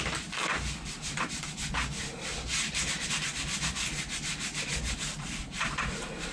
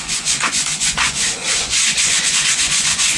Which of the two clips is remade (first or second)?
second